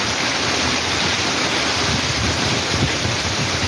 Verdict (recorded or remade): remade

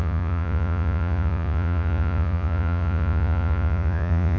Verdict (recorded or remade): remade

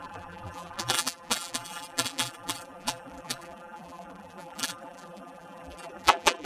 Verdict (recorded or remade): remade